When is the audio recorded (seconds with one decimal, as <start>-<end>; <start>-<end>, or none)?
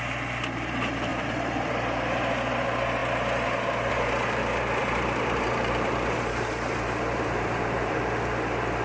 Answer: 0.0-1.1; 1.7-4.8; 8.0-8.8